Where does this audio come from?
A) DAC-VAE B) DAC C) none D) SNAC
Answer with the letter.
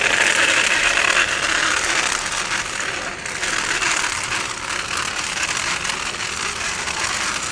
C